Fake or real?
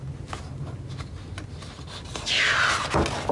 real